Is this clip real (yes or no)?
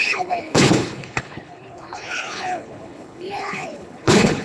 no